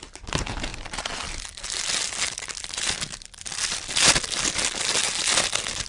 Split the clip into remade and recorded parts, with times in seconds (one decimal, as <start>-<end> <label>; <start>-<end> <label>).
0.0-5.9 recorded